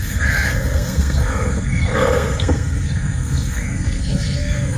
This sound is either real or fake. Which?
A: fake